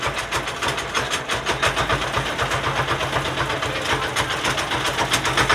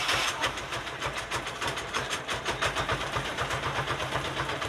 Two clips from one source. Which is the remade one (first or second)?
second